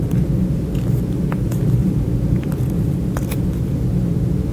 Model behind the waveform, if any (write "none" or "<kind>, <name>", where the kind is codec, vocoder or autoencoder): vocoder, BigVGAN v2